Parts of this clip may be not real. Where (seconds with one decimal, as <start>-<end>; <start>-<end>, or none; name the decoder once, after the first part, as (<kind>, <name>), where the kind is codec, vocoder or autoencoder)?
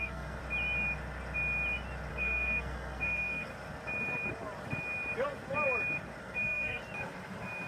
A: 0.0-0.4 (codec, SNAC); 2.1-3.5; 6.2-6.8